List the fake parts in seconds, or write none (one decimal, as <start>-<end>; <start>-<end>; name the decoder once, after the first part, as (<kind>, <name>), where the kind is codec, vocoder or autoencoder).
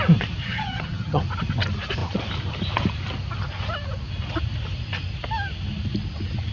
0.4-1.2 (vocoder, HiFi-GAN)